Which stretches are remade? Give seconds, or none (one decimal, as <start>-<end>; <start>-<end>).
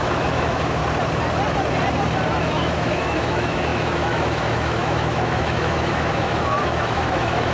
0.0-0.8; 2.4-7.5